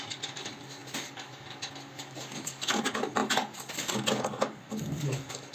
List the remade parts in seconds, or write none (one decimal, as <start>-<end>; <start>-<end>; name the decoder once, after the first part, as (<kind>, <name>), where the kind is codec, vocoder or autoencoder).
0.0-5.5 (codec, DAC)